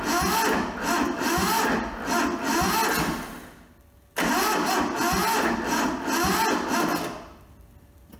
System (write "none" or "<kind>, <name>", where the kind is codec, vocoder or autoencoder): none